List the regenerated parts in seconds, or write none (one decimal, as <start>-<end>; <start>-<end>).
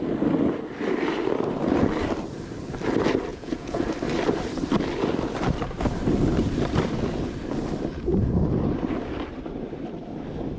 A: 3.3-3.9